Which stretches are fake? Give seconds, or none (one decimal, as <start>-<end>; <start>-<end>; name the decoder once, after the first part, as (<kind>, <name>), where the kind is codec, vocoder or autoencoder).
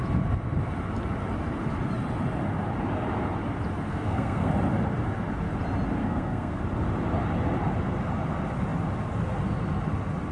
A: 3.9-4.5 (codec, SNAC); 6.0-6.6